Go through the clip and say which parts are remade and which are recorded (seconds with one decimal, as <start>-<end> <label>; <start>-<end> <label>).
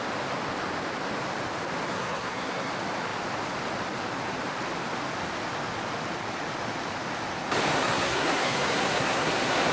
0.0-1.9 recorded; 1.9-2.7 remade; 2.7-7.7 recorded; 7.7-9.7 remade